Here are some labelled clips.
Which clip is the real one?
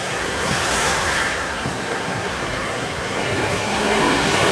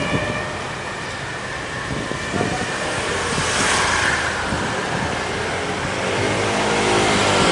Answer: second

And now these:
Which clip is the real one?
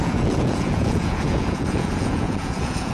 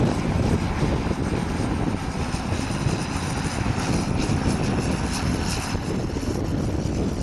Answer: second